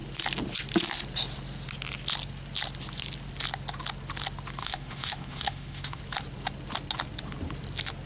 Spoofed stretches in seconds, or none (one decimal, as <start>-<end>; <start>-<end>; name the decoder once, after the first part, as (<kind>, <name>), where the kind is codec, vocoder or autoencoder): 4.6-6.0 (autoencoder, DAC-VAE)